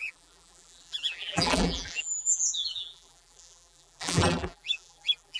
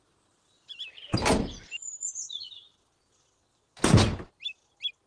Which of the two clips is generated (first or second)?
first